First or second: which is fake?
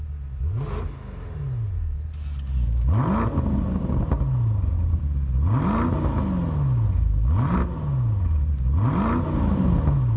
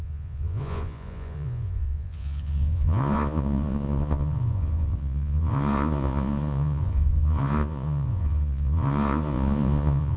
second